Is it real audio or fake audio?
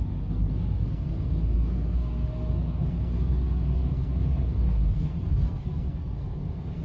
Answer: fake